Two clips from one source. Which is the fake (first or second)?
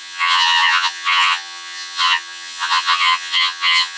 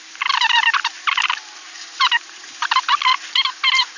first